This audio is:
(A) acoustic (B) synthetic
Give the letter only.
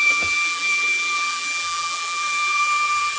B